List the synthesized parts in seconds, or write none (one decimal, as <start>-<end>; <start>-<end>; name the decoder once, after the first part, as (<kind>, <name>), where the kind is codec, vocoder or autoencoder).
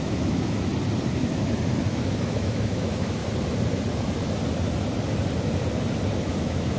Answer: 0.0-0.7 (autoencoder, DAC-VAE); 1.8-3.2; 6.2-6.8